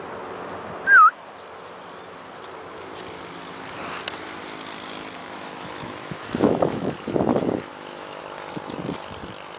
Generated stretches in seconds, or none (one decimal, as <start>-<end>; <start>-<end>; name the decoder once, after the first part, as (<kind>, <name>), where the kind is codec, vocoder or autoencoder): 5.2-6.9 (autoencoder, DAC-VAE); 7.7-8.2